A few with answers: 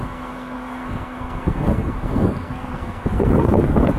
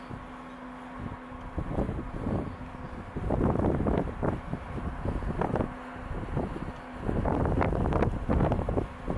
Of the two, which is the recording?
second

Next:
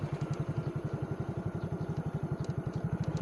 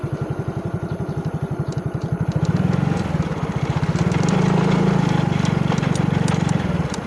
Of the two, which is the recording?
first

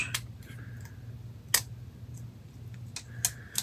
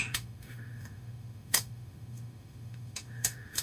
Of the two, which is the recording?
first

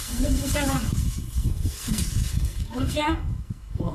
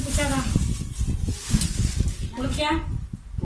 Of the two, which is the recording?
second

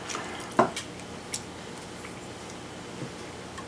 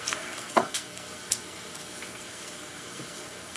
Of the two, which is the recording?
first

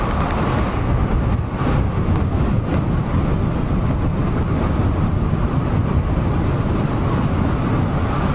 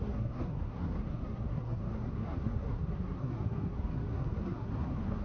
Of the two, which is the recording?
first